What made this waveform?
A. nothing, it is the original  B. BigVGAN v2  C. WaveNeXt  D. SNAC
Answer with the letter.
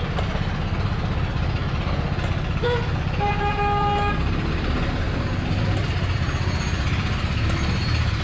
A